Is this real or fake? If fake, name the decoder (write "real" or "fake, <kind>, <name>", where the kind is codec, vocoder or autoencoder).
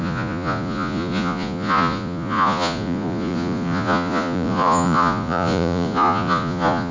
fake, vocoder, Vocos